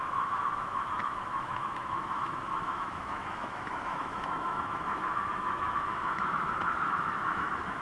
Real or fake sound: fake